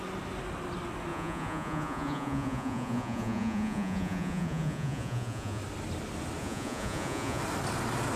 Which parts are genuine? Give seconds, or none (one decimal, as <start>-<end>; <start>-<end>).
0.0-1.1; 5.6-6.4; 7.4-8.2